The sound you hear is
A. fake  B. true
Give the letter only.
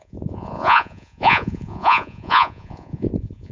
A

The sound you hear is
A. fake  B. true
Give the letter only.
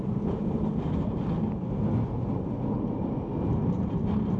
B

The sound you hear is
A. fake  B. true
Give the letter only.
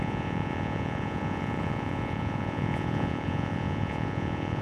A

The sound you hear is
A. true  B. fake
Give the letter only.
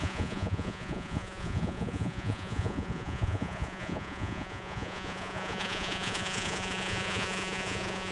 B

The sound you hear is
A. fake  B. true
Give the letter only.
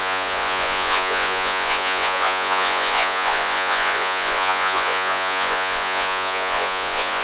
A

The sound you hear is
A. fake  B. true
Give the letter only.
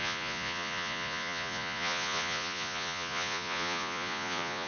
A